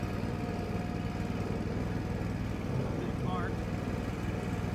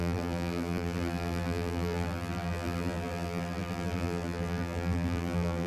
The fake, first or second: second